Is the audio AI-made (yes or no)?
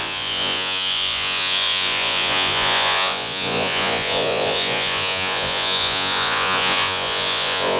yes